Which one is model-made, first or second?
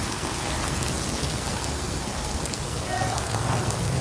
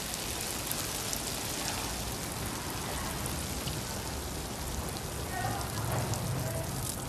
first